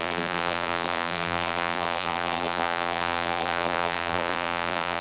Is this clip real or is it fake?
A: fake